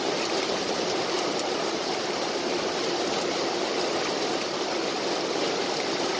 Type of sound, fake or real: real